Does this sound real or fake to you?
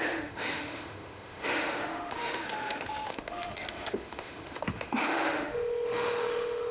fake